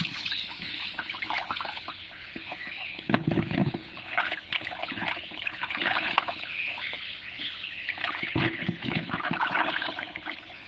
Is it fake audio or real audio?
fake